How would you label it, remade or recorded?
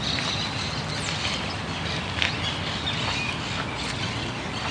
recorded